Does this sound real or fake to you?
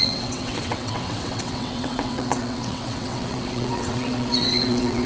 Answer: fake